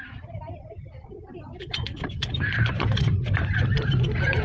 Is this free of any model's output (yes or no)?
no